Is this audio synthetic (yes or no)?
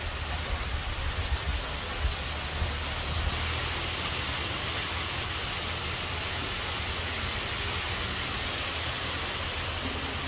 no